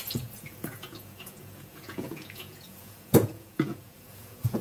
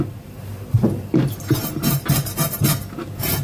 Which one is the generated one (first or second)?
first